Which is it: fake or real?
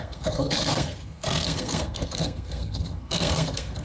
fake